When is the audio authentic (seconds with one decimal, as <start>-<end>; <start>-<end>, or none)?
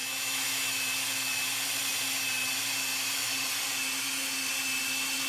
0.8-5.3